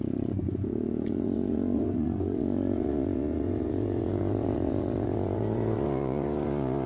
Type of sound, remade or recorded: remade